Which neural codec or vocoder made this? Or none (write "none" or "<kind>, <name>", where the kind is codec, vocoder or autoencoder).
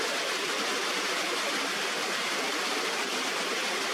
none